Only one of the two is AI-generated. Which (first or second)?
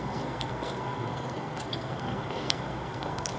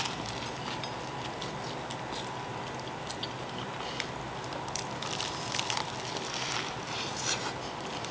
first